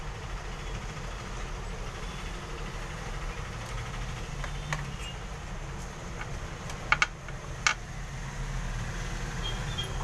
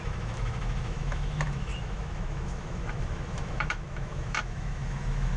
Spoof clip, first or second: second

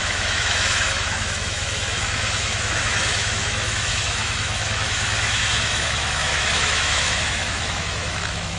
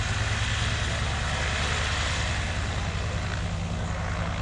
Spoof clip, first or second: first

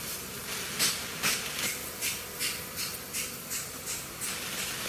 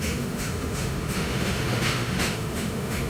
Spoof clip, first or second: second